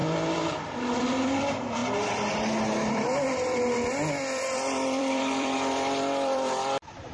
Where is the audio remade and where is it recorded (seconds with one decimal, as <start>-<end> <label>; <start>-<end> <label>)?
0.0-1.8 remade; 1.8-2.9 recorded; 2.9-7.1 remade